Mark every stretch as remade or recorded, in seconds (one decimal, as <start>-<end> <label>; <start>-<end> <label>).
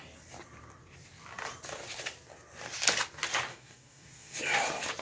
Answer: 0.0-3.5 recorded; 3.5-4.4 remade; 4.4-5.0 recorded